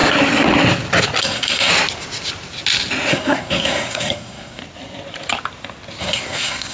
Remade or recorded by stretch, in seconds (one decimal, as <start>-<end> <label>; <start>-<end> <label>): 0.0-1.2 recorded; 1.2-1.7 remade; 1.7-3.1 recorded; 3.1-4.6 remade; 4.6-6.0 recorded; 6.0-6.7 remade